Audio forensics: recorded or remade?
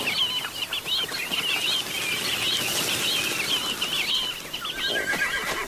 recorded